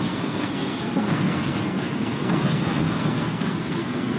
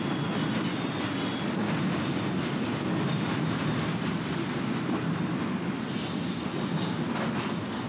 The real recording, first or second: second